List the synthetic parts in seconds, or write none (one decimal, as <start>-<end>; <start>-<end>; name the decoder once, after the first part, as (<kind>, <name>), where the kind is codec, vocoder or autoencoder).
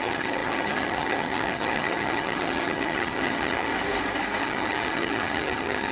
0.0-3.7 (vocoder, HiFi-GAN); 4.4-5.9